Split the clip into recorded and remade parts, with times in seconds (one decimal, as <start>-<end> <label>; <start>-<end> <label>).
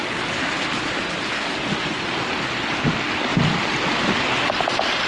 0.0-3.3 recorded; 3.3-4.5 remade; 4.5-5.1 recorded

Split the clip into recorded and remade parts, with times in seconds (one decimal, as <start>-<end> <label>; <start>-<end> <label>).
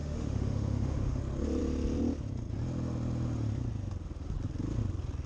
0.0-1.2 remade; 1.2-5.3 recorded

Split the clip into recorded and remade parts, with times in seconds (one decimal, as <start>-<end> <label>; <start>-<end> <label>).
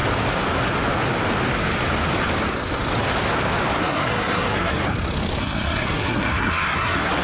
0.0-3.8 recorded; 3.8-4.8 remade; 4.8-5.4 recorded; 5.4-7.2 remade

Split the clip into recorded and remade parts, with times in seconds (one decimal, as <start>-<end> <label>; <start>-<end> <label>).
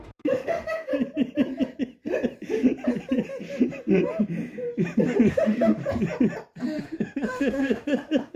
0.0-0.9 remade; 0.9-5.3 recorded; 5.3-5.8 remade; 5.8-6.8 recorded; 6.8-8.4 remade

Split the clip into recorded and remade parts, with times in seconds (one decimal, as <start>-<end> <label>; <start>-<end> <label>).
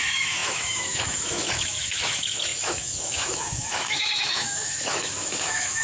0.0-5.8 remade